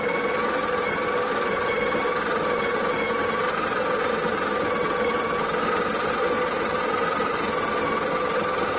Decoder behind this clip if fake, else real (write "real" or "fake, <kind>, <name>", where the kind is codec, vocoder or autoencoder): real